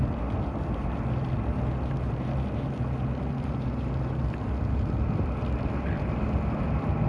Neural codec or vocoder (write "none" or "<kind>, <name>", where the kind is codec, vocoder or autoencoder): none